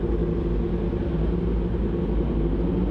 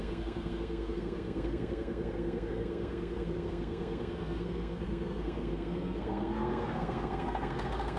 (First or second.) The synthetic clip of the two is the second